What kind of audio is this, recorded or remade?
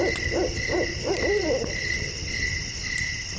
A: recorded